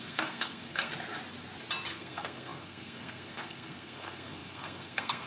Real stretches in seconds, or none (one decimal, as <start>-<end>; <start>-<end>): 0.9-1.9